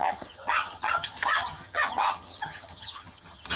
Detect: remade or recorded remade